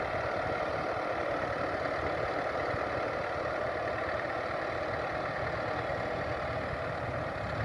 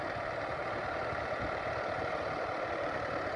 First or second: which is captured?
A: first